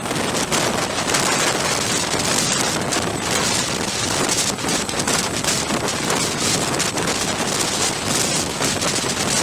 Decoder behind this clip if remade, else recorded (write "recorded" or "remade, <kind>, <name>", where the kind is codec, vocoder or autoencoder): recorded